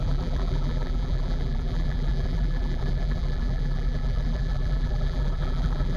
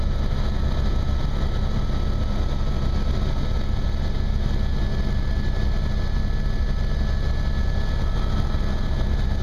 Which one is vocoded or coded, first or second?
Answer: first